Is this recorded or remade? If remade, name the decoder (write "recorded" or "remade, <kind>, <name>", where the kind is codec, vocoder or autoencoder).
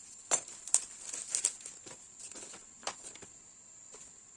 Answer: recorded